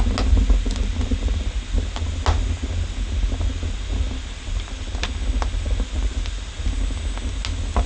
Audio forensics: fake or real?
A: real